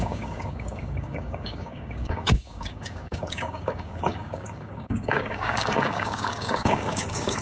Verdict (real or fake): fake